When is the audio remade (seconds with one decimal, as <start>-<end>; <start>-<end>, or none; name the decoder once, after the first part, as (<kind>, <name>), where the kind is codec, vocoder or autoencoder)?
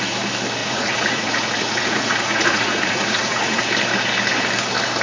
0.6-3.6 (vocoder, Vocos)